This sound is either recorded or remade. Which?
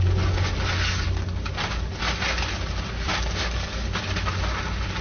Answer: recorded